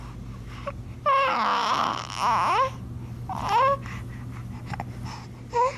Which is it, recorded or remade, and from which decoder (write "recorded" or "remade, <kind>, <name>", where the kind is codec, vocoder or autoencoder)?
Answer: recorded